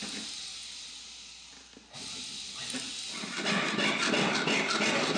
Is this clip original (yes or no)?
yes